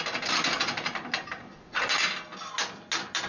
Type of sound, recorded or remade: recorded